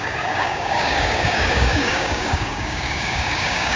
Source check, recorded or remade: remade